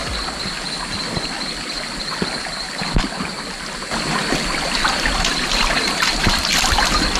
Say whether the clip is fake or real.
real